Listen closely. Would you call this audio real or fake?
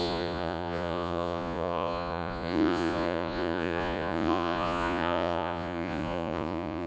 fake